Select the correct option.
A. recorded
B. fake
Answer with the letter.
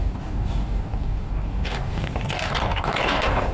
B